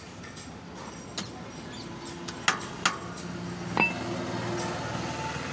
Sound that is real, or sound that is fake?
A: real